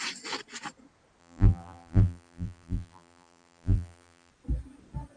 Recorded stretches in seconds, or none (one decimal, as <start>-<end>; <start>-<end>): 0.0-1.2; 4.3-5.2